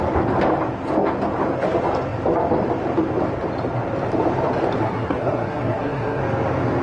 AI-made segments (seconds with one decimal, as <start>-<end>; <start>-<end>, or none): 4.8-6.2